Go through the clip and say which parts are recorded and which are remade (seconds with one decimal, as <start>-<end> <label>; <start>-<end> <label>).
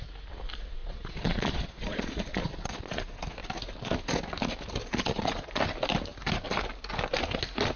0.0-0.8 recorded; 0.8-3.2 remade; 3.2-4.8 recorded; 4.8-5.5 remade; 5.5-7.8 recorded